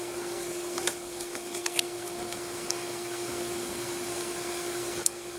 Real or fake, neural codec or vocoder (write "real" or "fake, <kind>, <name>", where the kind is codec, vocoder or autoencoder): fake, codec, SNAC